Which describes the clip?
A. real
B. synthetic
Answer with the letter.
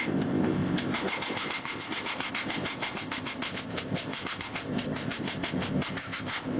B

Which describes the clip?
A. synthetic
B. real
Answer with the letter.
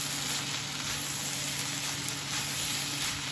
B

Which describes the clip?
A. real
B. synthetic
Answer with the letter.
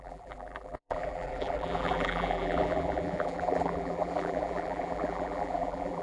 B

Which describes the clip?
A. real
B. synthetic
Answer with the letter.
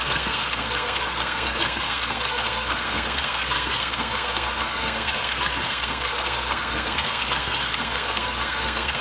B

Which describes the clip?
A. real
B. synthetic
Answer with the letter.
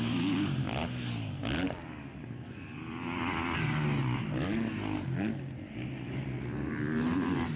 A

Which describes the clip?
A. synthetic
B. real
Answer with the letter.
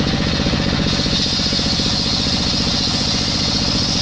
A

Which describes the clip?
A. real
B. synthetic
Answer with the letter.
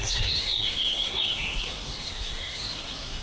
B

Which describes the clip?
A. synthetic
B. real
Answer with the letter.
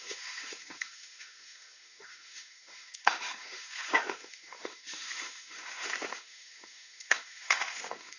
A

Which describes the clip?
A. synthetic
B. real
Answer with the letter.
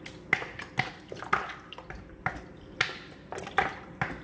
B